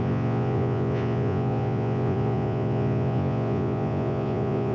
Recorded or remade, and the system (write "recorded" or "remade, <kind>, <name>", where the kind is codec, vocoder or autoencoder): remade, vocoder, Vocos